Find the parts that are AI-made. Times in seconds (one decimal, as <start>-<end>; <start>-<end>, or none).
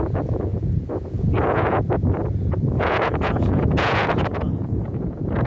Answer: 0.0-5.5